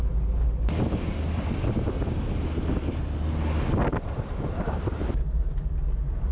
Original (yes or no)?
yes